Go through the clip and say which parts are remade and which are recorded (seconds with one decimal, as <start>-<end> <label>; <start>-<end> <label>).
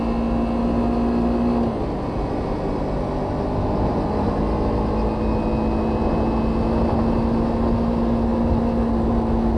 0.0-9.6 recorded